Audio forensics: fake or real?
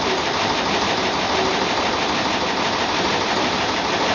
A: real